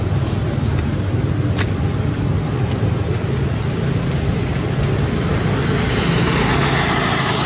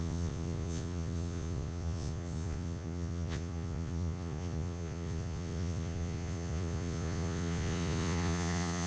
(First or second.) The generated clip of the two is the second